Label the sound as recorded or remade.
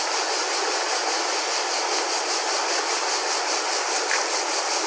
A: recorded